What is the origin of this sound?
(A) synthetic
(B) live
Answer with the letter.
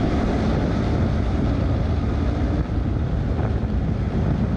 B